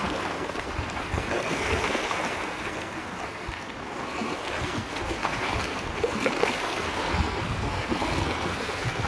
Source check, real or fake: fake